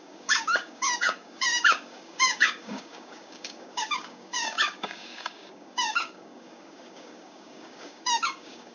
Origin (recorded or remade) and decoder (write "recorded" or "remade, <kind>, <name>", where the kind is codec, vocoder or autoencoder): remade, codec, DAC